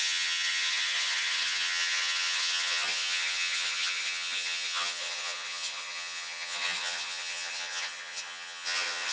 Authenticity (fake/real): fake